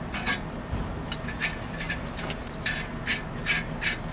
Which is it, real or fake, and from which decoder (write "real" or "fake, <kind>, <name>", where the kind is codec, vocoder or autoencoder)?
real